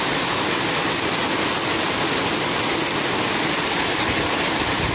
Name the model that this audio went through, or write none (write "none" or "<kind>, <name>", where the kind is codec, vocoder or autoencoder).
none